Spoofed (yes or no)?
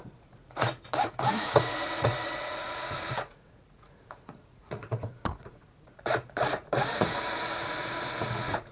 yes